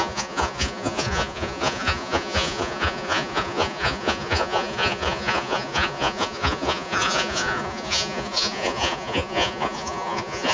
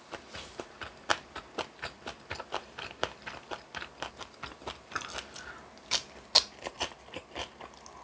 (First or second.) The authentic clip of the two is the second